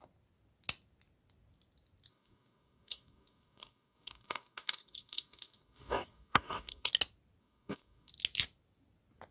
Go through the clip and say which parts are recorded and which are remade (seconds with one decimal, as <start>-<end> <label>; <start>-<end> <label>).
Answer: 0.0-2.1 recorded; 2.1-6.9 remade; 6.9-7.4 recorded; 7.4-8.1 remade; 8.1-9.3 recorded